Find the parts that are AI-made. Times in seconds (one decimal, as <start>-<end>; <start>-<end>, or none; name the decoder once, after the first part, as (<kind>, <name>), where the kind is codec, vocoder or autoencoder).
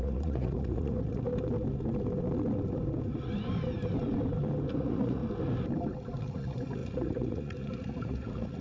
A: 0.0-1.3 (vocoder, Vocos); 4.7-5.2; 6.2-8.6